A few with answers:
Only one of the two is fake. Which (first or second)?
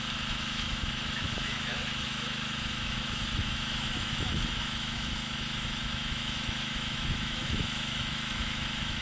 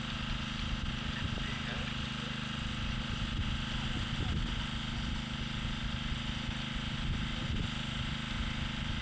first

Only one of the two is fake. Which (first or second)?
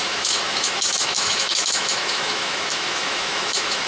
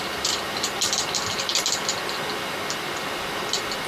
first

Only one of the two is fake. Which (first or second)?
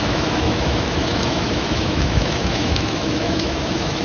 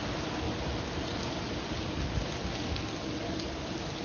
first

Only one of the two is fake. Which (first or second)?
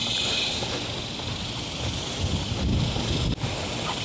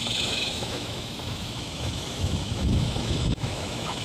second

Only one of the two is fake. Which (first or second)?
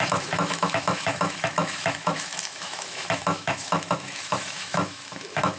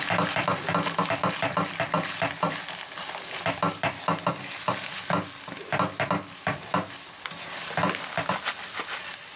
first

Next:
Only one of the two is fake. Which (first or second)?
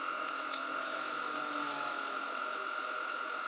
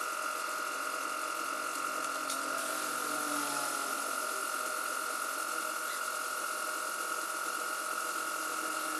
first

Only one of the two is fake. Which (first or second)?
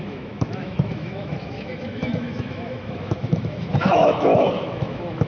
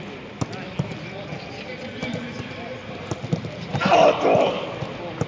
first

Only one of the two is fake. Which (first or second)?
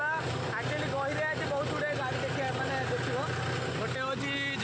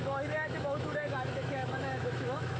second